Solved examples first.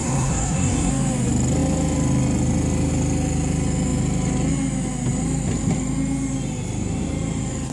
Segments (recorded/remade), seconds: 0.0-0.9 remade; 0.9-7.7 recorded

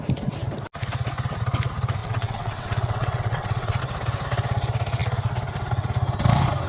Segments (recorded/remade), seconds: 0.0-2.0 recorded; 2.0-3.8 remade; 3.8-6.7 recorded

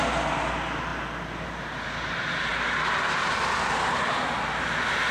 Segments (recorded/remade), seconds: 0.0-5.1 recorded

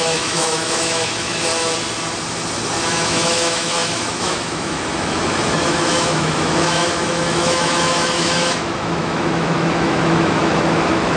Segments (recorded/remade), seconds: 0.0-1.5 remade; 1.5-2.9 recorded; 2.9-11.2 remade